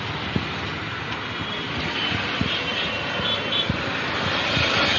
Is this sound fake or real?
real